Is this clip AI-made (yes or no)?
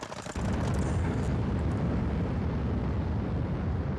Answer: no